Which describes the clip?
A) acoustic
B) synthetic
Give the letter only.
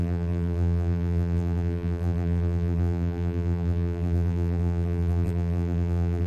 B